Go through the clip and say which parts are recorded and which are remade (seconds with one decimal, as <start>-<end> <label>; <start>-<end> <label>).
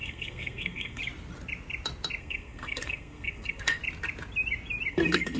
0.0-1.0 remade; 1.0-2.2 recorded; 2.2-3.8 remade; 3.8-4.9 recorded; 4.9-5.4 remade